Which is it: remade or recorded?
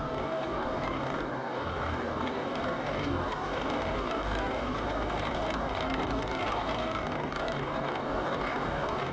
remade